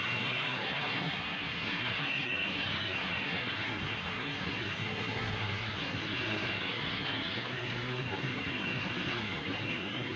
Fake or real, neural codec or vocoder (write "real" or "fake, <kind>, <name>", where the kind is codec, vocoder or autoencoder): fake, codec, SNAC